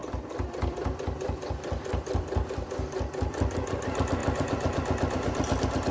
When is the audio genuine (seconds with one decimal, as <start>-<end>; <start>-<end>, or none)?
3.5-4.2